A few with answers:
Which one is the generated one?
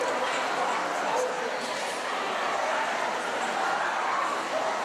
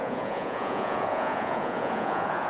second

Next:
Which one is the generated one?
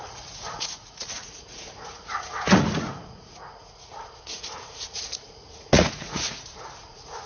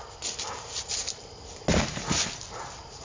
first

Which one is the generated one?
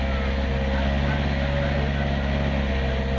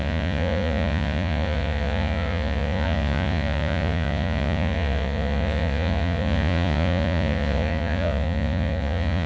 second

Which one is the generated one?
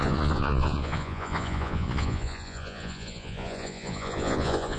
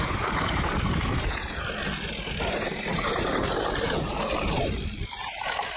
first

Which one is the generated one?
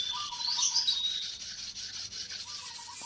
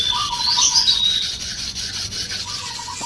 second